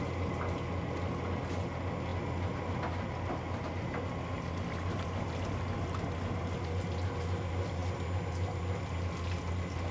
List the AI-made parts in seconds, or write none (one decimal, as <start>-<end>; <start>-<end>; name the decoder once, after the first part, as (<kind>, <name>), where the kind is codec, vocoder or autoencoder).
none